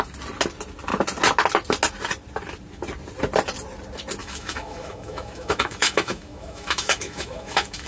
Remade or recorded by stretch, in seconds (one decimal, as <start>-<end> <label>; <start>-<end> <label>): 0.0-4.2 recorded; 4.2-7.9 remade

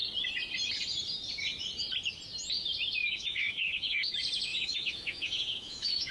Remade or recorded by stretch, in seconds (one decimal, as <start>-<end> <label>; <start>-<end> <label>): 0.0-3.0 recorded; 3.0-4.1 remade; 4.1-4.5 recorded; 4.5-6.1 remade